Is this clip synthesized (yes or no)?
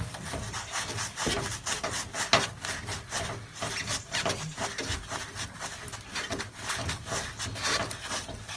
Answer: no